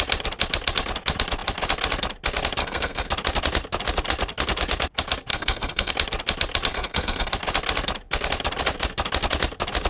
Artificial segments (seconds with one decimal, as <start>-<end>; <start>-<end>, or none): 2.6-3.1; 5.3-5.9; 6.7-7.3